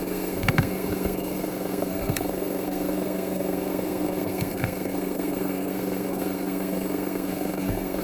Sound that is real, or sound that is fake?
fake